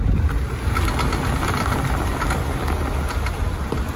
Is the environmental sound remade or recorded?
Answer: recorded